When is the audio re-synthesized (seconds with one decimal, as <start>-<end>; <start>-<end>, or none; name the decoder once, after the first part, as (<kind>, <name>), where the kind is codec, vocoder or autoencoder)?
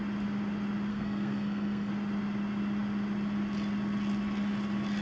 0.9-1.9 (codec, SNAC)